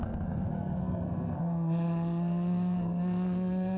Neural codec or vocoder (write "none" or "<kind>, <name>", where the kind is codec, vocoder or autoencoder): codec, SNAC